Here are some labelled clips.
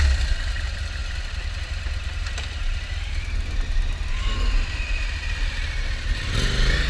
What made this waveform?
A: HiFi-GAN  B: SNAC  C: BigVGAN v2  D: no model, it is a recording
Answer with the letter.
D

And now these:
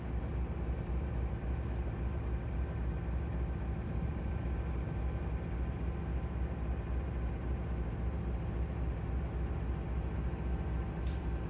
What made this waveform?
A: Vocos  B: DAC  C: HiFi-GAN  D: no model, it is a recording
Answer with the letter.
D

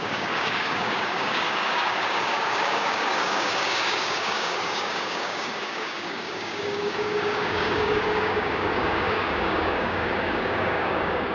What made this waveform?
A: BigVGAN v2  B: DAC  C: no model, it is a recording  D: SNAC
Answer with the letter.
B